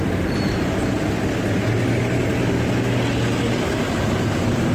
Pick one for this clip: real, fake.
real